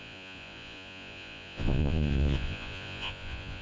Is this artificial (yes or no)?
yes